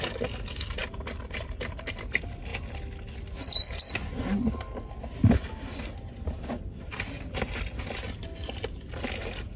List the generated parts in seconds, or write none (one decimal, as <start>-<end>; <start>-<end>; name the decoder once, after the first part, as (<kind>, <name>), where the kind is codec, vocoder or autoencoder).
none